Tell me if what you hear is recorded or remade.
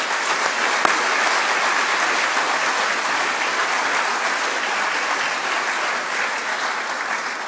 recorded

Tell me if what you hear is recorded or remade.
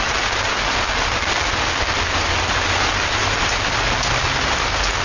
recorded